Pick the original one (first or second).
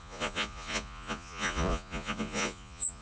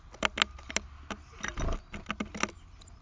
second